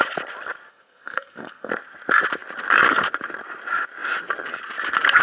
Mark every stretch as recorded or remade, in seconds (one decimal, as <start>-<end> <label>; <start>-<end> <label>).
0.0-0.7 recorded; 0.7-1.7 remade; 1.7-5.2 recorded